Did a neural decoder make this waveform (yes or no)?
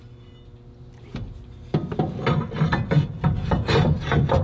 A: no